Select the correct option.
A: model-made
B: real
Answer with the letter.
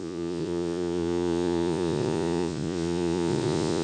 A